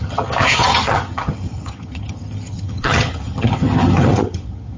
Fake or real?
fake